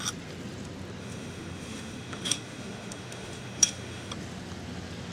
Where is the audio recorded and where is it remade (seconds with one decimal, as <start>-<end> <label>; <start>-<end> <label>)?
0.0-1.0 recorded; 1.0-4.1 remade; 4.1-5.1 recorded